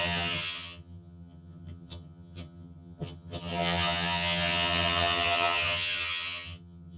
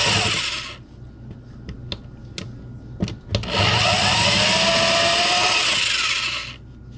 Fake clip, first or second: first